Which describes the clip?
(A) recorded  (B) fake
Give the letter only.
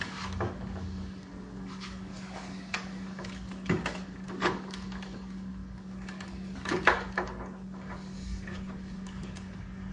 B